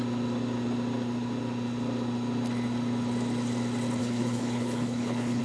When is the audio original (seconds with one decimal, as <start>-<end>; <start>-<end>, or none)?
0.0-4.0